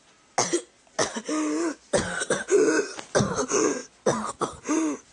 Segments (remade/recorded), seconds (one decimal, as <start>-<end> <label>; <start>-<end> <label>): 0.0-5.1 recorded